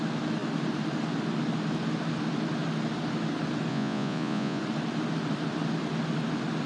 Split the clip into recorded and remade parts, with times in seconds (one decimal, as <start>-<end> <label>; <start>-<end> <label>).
0.0-3.7 recorded; 3.7-4.6 remade; 4.6-6.7 recorded